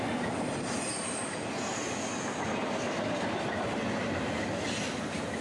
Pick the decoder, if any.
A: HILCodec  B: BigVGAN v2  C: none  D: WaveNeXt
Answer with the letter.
C